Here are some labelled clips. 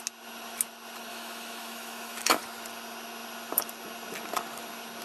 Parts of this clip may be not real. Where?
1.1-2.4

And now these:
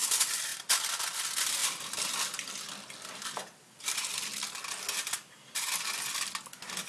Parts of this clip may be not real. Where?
none

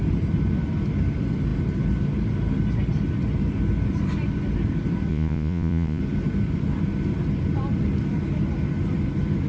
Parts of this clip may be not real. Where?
5.1-6.0

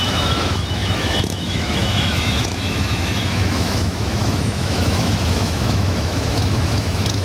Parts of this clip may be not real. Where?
0.0-7.2

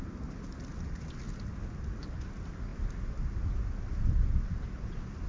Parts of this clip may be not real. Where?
none